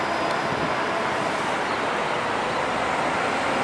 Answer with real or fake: real